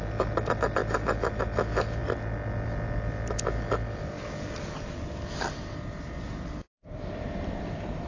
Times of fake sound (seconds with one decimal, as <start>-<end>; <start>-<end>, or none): 6.7-8.1